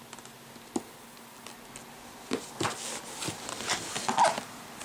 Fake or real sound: real